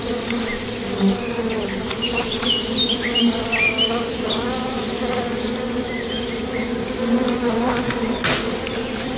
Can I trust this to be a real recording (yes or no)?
yes